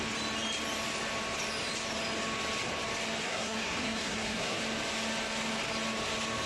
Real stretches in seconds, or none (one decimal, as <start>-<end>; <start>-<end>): 0.0-3.2; 4.6-6.5